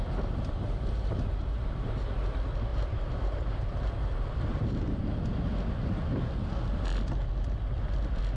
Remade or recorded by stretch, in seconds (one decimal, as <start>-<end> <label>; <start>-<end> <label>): 0.0-2.1 remade; 2.1-2.7 recorded; 2.7-5.0 remade; 5.0-8.4 recorded